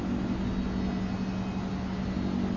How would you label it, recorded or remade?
recorded